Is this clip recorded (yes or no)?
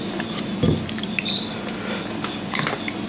yes